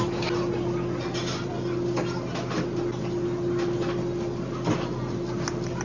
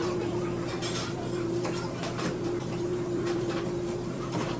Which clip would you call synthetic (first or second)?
second